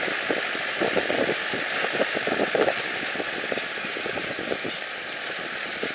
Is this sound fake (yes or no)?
no